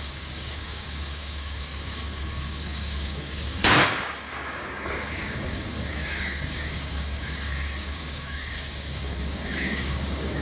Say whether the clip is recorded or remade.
remade